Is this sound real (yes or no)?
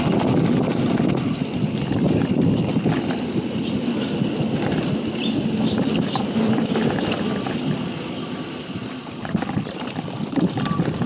yes